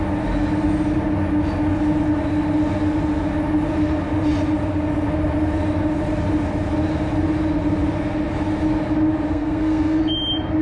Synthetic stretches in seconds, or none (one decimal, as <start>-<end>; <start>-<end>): 9.3-10.0